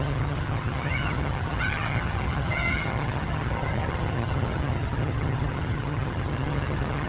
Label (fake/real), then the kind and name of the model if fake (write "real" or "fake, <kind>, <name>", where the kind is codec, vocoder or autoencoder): fake, vocoder, HiFi-GAN